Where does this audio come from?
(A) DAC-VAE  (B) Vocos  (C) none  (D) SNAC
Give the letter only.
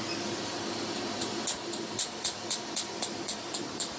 C